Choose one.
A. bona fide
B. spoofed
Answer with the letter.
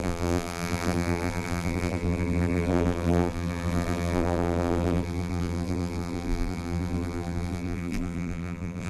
B